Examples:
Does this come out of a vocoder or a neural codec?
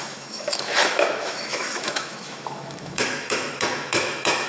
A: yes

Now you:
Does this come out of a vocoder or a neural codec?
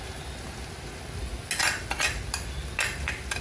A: no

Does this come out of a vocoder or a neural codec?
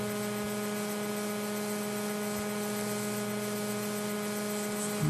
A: no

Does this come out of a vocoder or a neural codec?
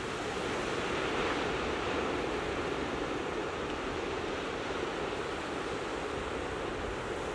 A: no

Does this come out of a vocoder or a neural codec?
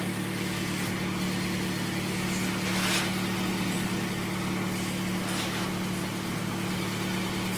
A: no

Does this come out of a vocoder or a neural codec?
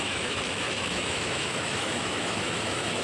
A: yes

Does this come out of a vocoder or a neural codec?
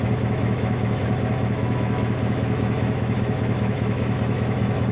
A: yes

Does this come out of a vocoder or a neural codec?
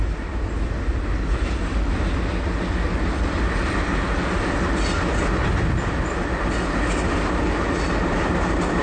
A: no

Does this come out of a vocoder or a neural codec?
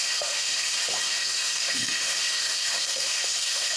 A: yes